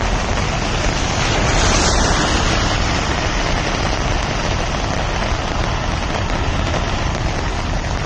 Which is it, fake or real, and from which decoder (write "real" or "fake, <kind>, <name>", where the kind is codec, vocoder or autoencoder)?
real